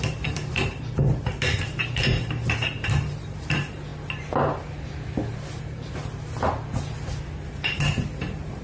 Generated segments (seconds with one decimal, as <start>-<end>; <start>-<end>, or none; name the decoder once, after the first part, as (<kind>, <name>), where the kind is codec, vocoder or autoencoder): 0.0-3.9 (vocoder, BigVGAN v2); 5.6-6.0; 7.5-8.6